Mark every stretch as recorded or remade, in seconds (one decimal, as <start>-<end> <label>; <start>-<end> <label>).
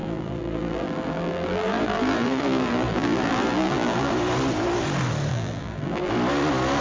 0.0-4.1 remade; 4.1-5.3 recorded; 5.3-6.1 remade; 6.1-6.8 recorded